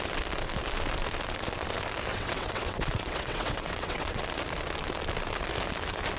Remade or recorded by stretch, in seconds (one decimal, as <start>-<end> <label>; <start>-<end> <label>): 0.0-2.1 recorded; 2.1-4.2 remade; 4.2-6.2 recorded